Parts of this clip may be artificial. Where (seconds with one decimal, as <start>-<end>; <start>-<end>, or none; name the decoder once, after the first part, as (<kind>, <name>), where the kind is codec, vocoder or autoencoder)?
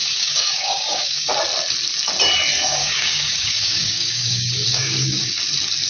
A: 0.0-1.3 (codec, DAC); 2.8-5.4